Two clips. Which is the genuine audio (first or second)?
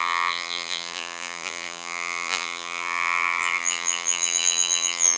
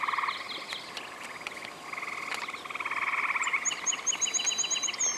second